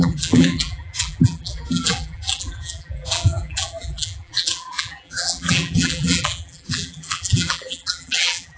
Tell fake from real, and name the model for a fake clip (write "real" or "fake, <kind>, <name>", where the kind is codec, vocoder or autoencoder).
fake, vocoder, BigVGAN v2